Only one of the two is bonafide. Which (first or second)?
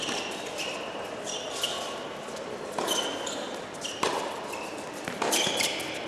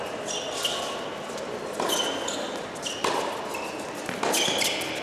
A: second